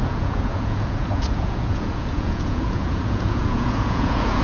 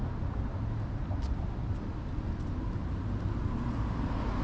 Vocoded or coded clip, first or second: first